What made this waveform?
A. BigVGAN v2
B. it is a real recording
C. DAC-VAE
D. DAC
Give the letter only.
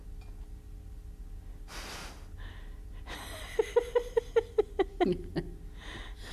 B